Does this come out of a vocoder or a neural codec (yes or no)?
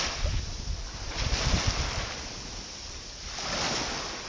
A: no